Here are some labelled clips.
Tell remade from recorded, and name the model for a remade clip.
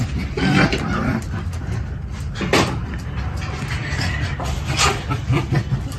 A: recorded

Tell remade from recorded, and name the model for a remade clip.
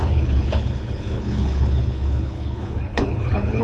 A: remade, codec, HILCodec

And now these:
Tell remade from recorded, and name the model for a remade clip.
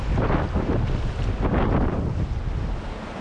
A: recorded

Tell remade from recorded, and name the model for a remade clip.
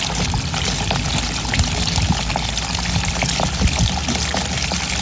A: recorded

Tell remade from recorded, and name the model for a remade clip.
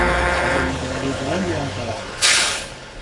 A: remade, codec, HILCodec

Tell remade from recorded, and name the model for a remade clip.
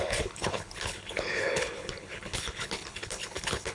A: remade, codec, HILCodec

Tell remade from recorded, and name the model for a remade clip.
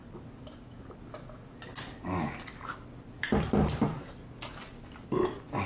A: recorded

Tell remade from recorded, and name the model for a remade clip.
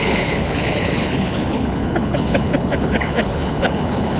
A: remade, codec, HILCodec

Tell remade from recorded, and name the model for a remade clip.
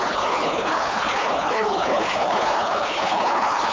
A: remade, codec, HILCodec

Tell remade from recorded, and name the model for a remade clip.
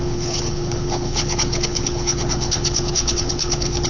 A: remade, codec, HILCodec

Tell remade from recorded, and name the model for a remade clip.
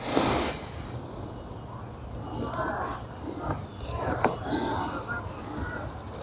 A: recorded